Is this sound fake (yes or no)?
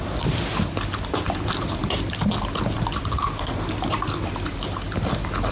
no